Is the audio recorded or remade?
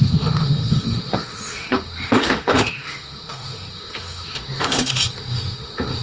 remade